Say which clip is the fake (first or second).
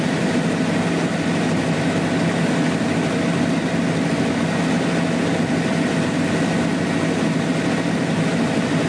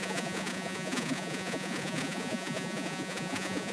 second